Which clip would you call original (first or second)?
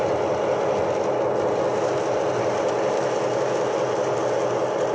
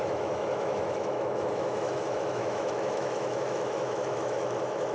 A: first